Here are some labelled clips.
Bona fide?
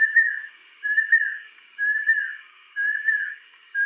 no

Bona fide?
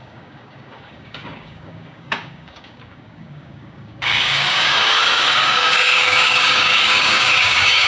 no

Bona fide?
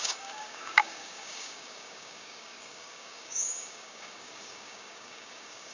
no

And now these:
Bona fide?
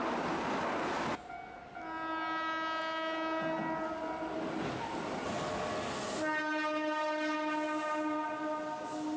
yes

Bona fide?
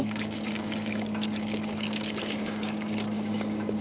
no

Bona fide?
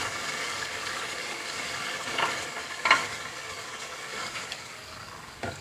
no